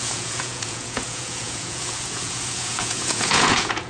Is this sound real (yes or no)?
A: no